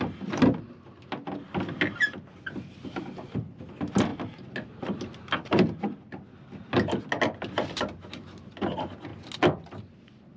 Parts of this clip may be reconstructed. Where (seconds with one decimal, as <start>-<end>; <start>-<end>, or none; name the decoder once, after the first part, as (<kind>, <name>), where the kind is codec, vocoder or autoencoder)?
none